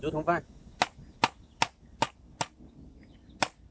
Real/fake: real